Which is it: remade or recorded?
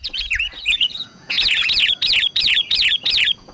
remade